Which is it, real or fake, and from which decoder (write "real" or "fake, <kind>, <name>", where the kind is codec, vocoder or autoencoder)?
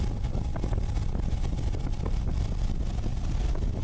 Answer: fake, vocoder, BigVGAN v2